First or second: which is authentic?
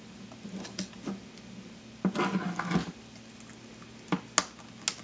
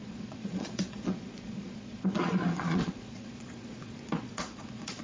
first